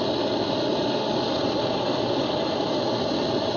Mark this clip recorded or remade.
recorded